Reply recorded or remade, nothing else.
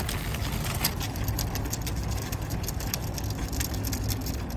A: recorded